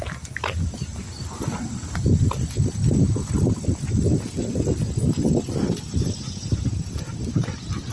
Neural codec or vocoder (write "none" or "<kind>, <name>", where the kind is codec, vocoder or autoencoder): none